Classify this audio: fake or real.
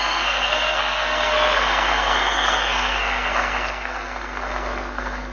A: fake